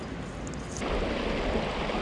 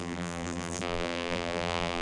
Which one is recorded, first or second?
first